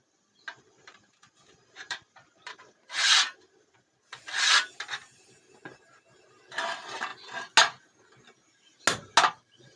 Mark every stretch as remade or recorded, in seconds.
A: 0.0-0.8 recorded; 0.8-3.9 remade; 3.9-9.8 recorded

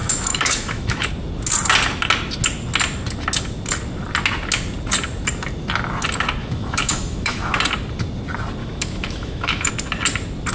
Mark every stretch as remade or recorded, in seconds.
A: 0.0-1.1 remade; 1.1-6.4 recorded; 6.4-7.6 remade; 7.6-8.6 recorded; 8.6-9.7 remade; 9.7-10.5 recorded

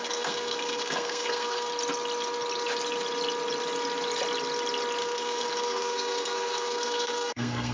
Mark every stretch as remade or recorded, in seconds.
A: 0.0-1.7 remade; 1.7-5.0 recorded; 5.0-7.7 remade

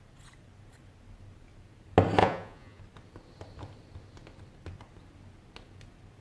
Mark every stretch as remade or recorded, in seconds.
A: 0.0-2.2 recorded; 2.2-2.8 remade; 2.8-6.2 recorded

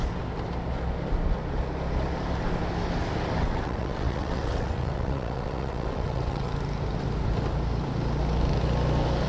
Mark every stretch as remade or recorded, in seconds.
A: 0.0-3.4 recorded; 3.4-6.5 remade; 6.5-9.3 recorded

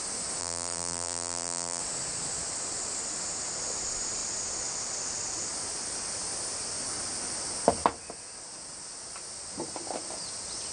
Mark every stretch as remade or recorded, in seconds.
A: 0.0-0.4 recorded; 0.4-1.8 remade; 1.8-10.7 recorded